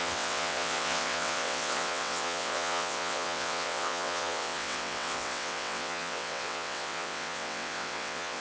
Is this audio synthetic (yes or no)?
yes